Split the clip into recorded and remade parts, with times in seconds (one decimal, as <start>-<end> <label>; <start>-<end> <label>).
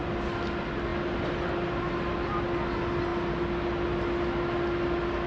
0.0-5.3 recorded